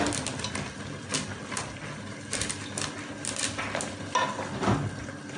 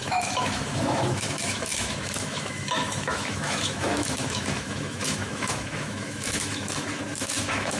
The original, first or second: first